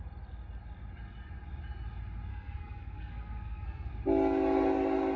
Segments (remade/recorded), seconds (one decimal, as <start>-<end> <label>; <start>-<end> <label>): 0.0-2.3 recorded; 2.3-3.9 remade; 3.9-5.2 recorded